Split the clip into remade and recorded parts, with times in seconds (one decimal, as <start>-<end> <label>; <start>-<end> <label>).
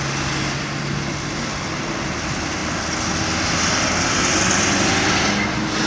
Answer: 0.0-5.9 recorded